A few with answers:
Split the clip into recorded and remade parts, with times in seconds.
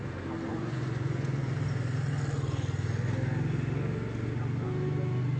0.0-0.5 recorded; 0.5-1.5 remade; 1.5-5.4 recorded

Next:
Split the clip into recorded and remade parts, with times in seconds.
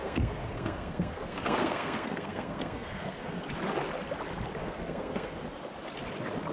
0.0-3.4 remade; 3.4-4.6 recorded; 4.6-5.4 remade; 5.4-6.5 recorded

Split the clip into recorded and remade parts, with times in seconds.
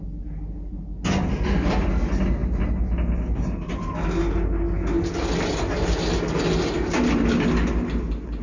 0.0-8.4 recorded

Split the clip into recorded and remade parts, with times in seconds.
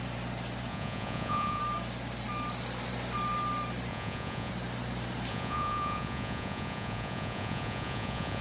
0.0-0.7 recorded; 0.7-1.6 remade; 1.6-3.9 recorded; 3.9-4.5 remade; 4.5-5.3 recorded; 5.3-8.4 remade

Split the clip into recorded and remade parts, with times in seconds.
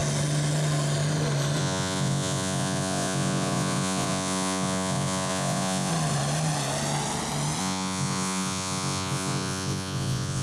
0.0-1.6 recorded; 1.6-5.9 remade; 5.9-7.6 recorded; 7.6-10.4 remade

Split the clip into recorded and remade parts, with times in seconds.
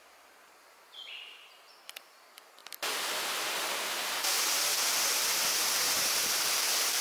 0.0-2.6 remade; 2.6-3.7 recorded; 3.7-4.7 remade; 4.7-6.2 recorded; 6.2-7.0 remade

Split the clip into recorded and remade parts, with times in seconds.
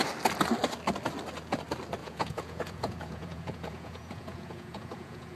0.0-2.0 recorded; 2.0-5.4 remade